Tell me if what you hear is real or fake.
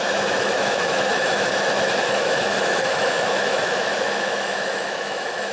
fake